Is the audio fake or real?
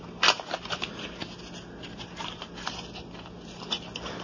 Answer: real